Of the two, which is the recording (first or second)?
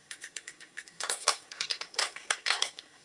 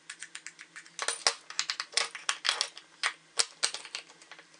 second